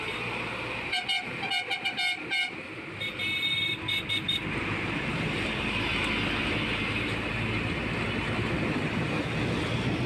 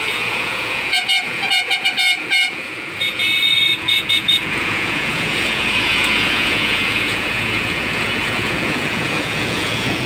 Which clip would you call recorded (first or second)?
first